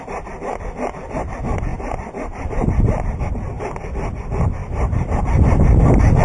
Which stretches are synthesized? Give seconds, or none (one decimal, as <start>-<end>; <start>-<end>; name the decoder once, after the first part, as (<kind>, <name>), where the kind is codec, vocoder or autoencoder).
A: 1.7-3.3 (vocoder, BigVGAN v2); 4.6-5.2